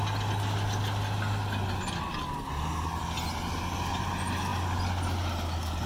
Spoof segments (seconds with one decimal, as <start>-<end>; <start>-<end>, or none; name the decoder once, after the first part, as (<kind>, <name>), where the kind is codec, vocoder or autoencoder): none